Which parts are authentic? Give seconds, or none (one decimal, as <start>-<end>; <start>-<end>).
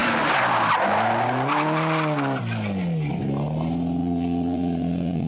0.0-4.0